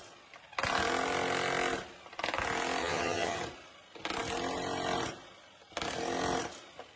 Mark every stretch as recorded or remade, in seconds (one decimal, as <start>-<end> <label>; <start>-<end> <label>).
0.0-2.8 recorded; 2.8-3.4 remade; 3.4-7.0 recorded